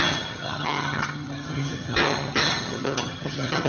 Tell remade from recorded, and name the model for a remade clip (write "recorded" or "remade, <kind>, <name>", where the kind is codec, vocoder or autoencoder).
remade, vocoder, HiFi-GAN